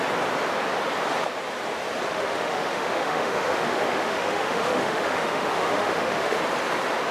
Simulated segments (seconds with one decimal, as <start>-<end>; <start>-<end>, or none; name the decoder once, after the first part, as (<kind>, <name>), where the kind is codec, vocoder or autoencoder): 2.1-6.4 (autoencoder, DAC-VAE)